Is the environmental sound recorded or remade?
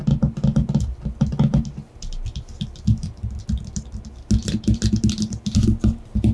recorded